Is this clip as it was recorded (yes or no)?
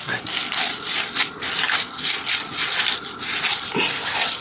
yes